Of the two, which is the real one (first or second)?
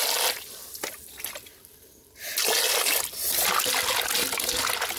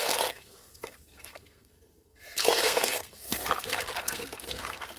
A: first